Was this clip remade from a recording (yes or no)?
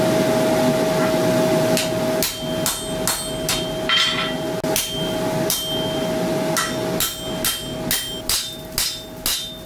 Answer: no